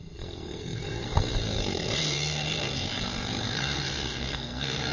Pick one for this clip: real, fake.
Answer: fake